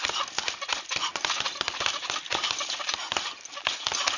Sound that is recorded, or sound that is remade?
recorded